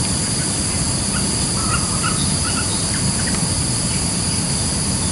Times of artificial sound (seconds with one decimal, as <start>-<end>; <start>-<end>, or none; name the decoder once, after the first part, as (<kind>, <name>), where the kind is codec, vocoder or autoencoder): 2.7-3.2 (vocoder, BigVGAN v2)